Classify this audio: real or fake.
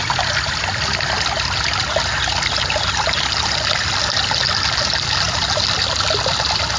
real